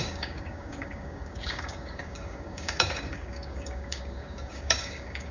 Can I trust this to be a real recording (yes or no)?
no